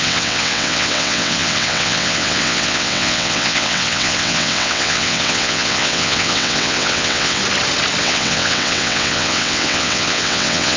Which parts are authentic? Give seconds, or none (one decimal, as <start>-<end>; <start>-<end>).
7.4-8.0